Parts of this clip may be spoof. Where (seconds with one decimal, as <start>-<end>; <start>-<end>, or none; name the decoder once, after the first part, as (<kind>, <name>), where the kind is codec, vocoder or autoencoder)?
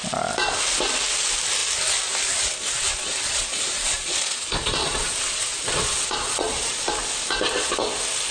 3.3-6.9 (vocoder, Vocos)